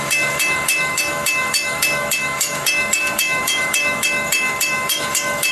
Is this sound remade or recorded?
remade